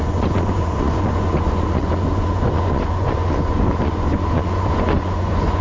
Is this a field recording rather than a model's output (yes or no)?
no